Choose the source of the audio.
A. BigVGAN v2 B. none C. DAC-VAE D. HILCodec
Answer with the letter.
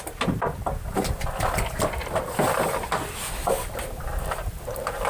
B